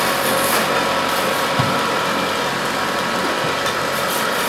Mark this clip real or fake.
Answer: real